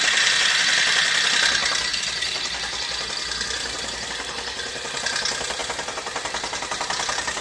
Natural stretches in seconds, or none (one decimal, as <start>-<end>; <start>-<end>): 0.0-7.4